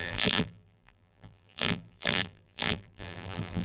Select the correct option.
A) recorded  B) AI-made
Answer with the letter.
B